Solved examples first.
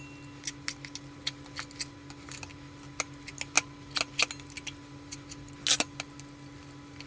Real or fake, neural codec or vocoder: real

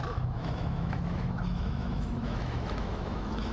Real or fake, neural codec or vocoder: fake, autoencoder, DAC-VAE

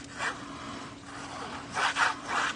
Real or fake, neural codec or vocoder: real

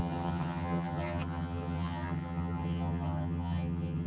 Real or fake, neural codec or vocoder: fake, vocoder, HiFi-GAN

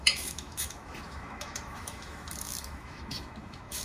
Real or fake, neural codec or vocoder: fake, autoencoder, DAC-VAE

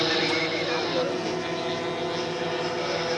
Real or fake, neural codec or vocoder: real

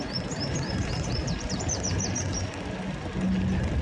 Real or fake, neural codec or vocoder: real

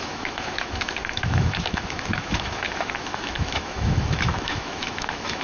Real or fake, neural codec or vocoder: fake, autoencoder, DAC-VAE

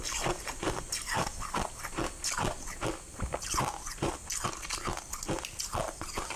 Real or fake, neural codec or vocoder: real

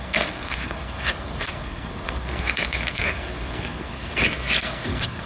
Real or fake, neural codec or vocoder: fake, codec, SNAC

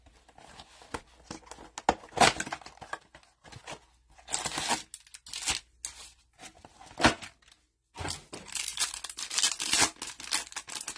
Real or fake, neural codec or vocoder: real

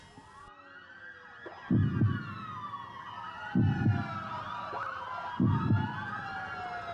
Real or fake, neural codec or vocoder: real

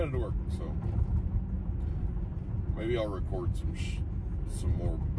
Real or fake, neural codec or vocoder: real